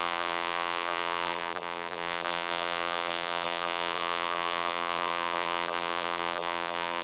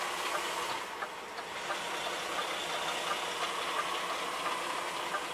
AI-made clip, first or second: first